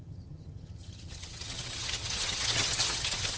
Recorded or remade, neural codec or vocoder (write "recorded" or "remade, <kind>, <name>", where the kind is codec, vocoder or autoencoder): remade, vocoder, HiFi-GAN